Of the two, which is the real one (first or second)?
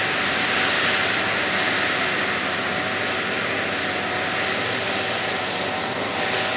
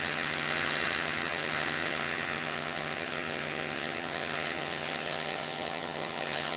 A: first